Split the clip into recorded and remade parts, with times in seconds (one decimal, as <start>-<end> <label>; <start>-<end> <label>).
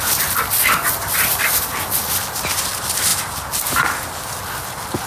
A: 0.0-5.1 recorded